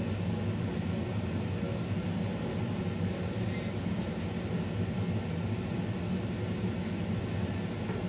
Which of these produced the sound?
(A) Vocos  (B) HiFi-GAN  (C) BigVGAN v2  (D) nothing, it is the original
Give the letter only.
D